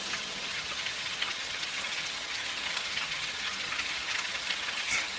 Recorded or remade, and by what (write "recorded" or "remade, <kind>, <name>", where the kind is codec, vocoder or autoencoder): remade, vocoder, HiFi-GAN